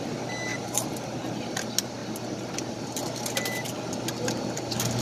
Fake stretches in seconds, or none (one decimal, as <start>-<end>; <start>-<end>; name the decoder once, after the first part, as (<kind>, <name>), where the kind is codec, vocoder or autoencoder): none